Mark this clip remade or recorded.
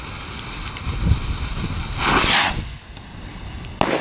recorded